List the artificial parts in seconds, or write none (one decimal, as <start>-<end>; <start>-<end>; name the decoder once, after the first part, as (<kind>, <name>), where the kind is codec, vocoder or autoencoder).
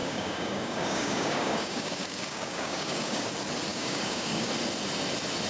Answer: 0.0-3.3 (codec, DAC); 3.7-4.5